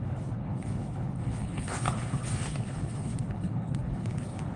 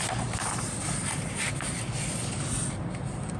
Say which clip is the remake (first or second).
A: first